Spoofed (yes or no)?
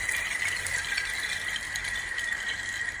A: no